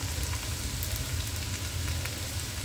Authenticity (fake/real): real